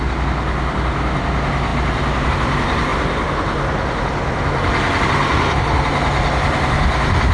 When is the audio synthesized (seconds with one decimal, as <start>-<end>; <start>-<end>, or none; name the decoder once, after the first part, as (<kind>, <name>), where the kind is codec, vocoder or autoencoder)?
none